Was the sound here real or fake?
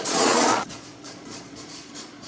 fake